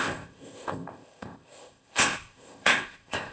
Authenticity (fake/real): fake